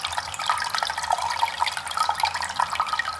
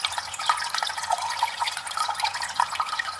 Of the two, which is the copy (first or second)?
second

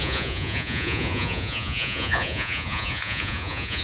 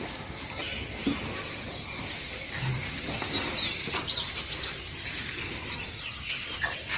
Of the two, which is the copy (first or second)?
first